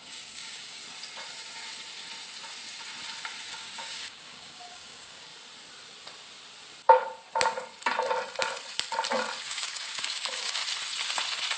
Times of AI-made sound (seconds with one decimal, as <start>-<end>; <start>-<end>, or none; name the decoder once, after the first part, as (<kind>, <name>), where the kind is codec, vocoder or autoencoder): 0.0-0.8 (codec, DAC); 3.5-5.3; 9.4-10.6